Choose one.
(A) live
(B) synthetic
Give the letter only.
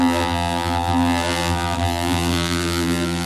B